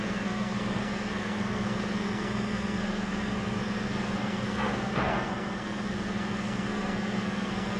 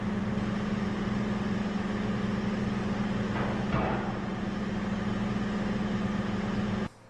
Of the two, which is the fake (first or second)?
first